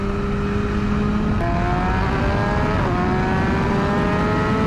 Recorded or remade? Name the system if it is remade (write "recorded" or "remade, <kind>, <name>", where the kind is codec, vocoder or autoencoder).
recorded